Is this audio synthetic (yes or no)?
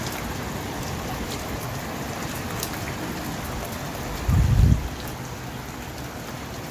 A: no